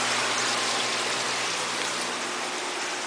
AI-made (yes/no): no